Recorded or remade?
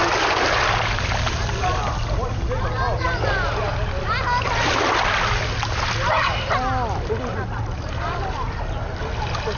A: recorded